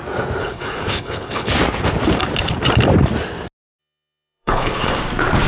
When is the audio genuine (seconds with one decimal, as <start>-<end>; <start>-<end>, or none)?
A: 0.0-0.4; 1.5-3.8; 4.9-5.5